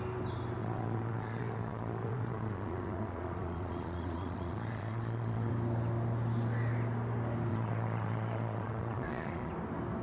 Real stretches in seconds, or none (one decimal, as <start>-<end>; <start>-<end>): 0.0-0.6; 5.5-7.5; 9.5-10.0